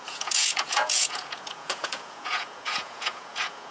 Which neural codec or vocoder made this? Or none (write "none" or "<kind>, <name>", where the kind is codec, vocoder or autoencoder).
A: vocoder, Vocos